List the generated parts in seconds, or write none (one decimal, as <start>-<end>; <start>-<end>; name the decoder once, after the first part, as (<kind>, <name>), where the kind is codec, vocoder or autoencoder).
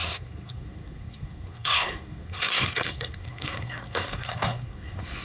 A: 0.0-5.2 (codec, SNAC)